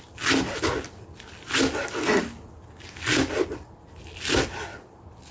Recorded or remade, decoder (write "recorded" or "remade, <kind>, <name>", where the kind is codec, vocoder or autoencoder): recorded